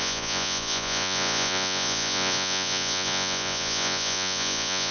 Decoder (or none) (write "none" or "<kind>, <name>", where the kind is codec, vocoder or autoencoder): vocoder, Vocos